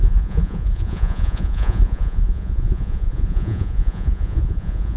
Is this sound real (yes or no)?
no